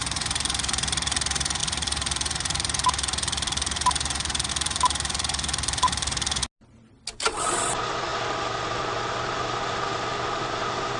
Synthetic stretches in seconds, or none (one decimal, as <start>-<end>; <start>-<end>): 0.0-6.4; 7.2-11.0

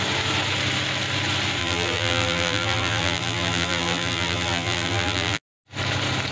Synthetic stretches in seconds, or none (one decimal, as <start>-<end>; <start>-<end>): 1.6-5.4

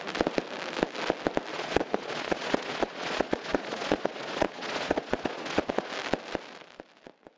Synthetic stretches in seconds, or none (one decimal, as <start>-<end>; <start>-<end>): 1.5-5.9

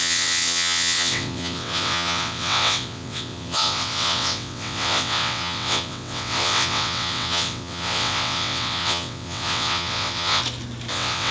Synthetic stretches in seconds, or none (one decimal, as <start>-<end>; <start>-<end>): 0.0-10.4; 10.9-11.3

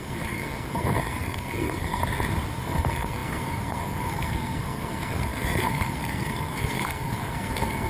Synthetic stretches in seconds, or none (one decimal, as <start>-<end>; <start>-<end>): 0.0-2.0; 2.5-7.9

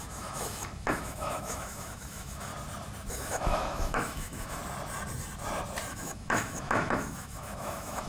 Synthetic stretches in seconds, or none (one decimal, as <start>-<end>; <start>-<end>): 0.0-2.5; 3.1-4.6; 5.9-8.1